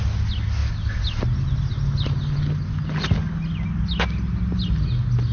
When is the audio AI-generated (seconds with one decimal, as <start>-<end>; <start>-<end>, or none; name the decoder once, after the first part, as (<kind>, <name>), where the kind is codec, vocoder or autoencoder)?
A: none